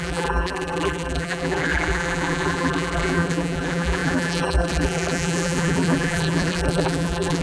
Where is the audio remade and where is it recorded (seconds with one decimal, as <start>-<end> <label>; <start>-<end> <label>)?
0.0-7.4 remade

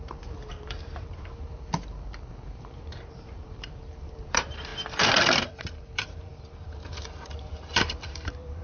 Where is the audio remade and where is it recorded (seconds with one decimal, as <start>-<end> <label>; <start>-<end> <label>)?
0.0-4.7 remade; 4.7-5.6 recorded; 5.6-8.6 remade

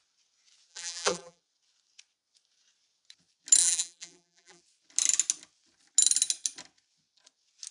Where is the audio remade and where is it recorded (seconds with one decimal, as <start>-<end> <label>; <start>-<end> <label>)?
0.0-0.7 recorded; 0.7-1.4 remade; 1.4-3.6 recorded; 3.6-4.6 remade; 4.6-7.7 recorded